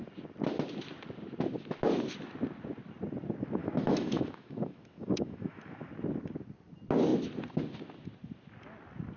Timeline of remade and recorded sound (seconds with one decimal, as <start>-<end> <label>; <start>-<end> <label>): 0.0-3.6 recorded; 3.6-5.9 remade; 5.9-9.2 recorded